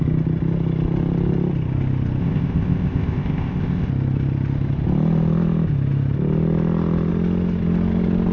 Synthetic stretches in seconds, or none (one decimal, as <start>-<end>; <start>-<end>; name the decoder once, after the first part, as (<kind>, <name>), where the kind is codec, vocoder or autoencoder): 2.2-3.9 (codec, ZipCodec)